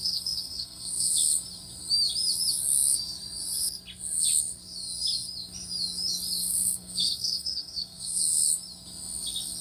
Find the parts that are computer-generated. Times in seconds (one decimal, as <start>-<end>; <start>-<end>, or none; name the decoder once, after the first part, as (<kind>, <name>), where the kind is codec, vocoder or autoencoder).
0.0-1.1 (codec, SNAC); 6.4-8.2